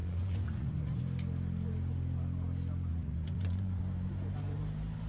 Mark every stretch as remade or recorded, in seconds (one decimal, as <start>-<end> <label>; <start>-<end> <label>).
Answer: 0.0-1.0 remade; 1.0-2.9 recorded; 2.9-3.8 remade; 3.8-5.1 recorded

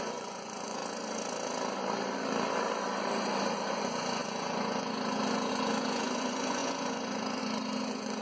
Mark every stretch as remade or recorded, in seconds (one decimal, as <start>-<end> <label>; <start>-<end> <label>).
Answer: 0.0-0.8 remade; 0.8-3.7 recorded; 3.7-8.2 remade

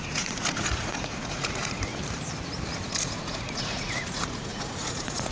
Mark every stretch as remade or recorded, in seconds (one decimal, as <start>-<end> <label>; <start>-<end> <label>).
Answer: 0.0-1.9 remade; 1.9-2.8 recorded; 2.8-5.3 remade

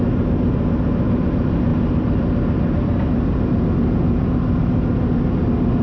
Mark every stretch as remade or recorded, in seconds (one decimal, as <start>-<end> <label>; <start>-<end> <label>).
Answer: 0.0-5.8 recorded

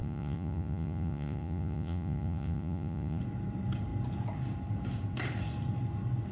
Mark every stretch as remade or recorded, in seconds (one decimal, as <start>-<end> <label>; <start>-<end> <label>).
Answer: 0.0-3.2 remade; 3.2-6.3 recorded

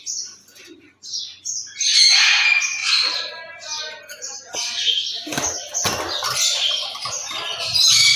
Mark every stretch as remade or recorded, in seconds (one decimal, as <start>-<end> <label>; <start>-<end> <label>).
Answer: 0.0-8.2 recorded